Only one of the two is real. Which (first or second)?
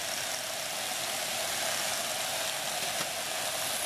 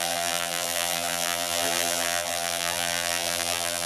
first